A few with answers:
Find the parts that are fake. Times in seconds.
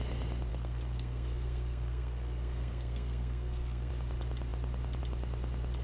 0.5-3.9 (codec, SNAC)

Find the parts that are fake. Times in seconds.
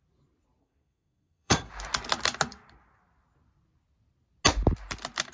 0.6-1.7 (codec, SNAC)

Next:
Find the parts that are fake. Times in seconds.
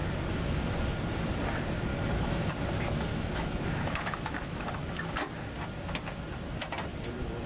1.9-2.5 (autoencoder, DAC-VAE); 3.1-4.7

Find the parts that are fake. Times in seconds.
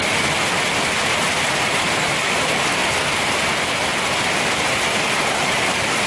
none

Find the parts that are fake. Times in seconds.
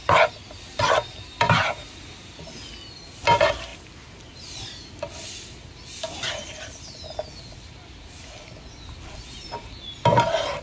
none